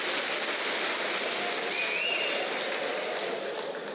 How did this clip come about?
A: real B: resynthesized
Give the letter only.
A